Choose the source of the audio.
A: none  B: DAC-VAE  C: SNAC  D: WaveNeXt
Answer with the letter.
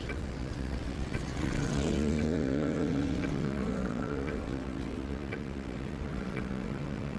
D